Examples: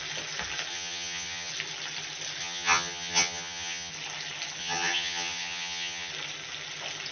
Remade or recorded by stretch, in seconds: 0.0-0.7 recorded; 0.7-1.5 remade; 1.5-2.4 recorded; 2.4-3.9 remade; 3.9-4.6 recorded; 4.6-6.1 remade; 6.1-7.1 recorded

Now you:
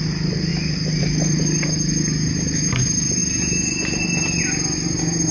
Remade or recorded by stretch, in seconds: 0.0-5.3 recorded

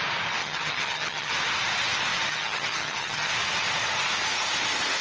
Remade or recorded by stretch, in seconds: 0.0-0.4 recorded; 0.4-1.3 remade; 1.3-2.3 recorded; 2.3-3.3 remade; 3.3-5.0 recorded

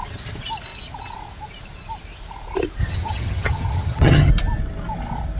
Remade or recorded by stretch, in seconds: 0.0-2.8 recorded; 2.8-4.3 remade; 4.3-5.4 recorded

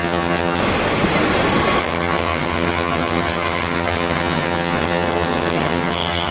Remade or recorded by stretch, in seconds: 0.0-0.6 remade; 0.6-1.8 recorded; 1.8-6.3 remade